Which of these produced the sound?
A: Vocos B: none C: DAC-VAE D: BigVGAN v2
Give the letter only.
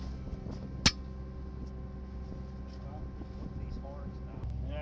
B